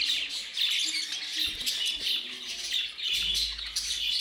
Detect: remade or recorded recorded